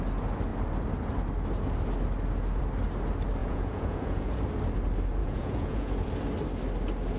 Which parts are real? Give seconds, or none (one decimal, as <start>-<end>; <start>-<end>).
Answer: 0.0-3.4; 4.5-5.2; 6.1-7.2